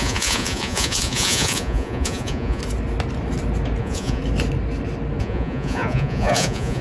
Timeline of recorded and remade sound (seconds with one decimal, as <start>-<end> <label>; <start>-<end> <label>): 0.0-2.6 remade; 2.6-3.8 recorded; 3.8-4.2 remade; 4.2-5.2 recorded; 5.2-6.8 remade